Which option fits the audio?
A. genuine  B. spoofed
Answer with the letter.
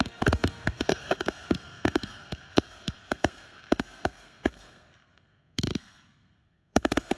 B